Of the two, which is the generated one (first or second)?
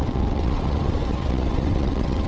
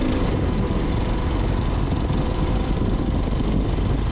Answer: first